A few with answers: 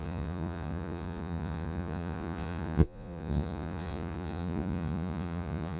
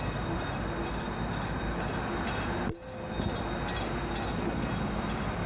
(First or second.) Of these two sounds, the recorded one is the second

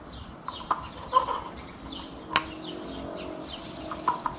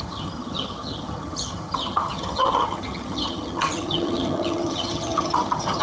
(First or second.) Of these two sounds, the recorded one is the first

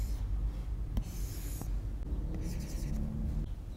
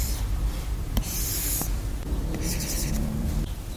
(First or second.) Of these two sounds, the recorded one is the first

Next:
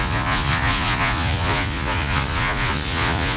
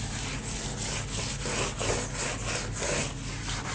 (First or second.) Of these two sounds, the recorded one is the second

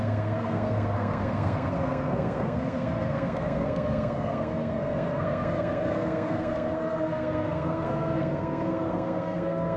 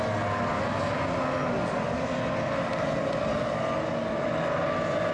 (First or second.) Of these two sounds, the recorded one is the second